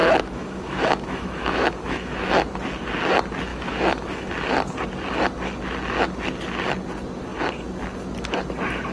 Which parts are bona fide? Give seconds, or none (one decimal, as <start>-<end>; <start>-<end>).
2.3-3.5; 4.3-8.9